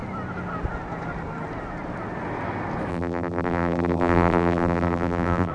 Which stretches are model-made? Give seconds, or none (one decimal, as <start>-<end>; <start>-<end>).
2.9-5.5